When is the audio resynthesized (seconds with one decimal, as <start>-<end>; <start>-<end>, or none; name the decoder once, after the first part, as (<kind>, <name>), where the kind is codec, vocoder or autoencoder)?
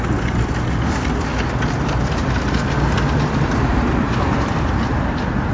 3.7-5.1 (vocoder, BigVGAN v2)